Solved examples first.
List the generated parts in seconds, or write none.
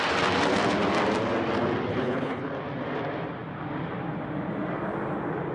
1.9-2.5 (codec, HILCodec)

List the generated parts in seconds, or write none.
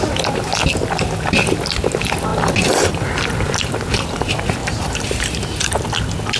4.6-5.7 (vocoder, BigVGAN v2)